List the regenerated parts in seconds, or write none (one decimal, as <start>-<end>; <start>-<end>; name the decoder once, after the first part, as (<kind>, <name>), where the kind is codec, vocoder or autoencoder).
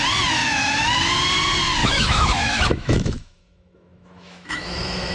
0.4-1.0 (autoencoder, DAC-VAE); 1.8-5.1